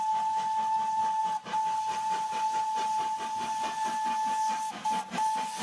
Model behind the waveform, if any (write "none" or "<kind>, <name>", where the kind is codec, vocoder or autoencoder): none